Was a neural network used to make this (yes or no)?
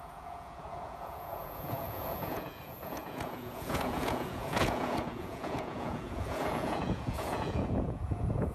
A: yes